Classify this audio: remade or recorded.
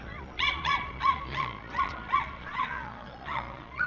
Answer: remade